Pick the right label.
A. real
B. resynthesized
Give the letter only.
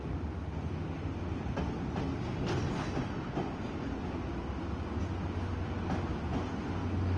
A